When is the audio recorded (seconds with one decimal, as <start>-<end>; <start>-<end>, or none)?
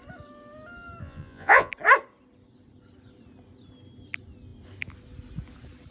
0.0-1.0; 1.7-5.9